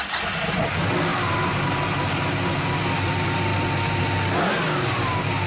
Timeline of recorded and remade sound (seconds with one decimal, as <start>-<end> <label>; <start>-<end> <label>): 0.0-5.5 recorded